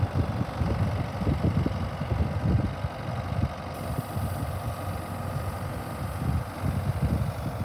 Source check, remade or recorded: recorded